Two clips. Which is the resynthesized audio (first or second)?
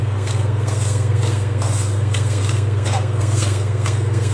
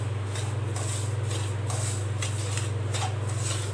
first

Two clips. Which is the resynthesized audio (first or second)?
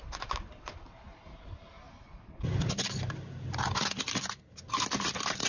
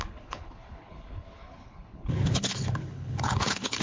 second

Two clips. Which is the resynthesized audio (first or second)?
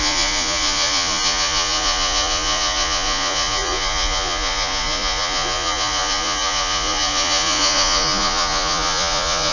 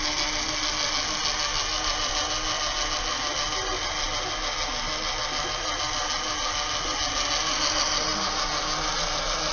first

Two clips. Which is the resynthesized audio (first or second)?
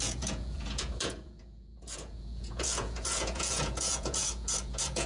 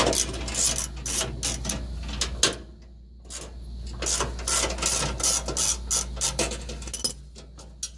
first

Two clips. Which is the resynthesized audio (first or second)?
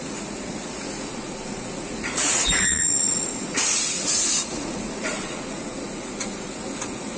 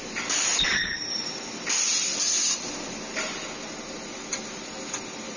first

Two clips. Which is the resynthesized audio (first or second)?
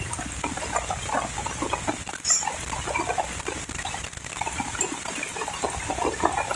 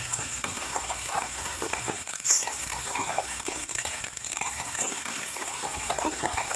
second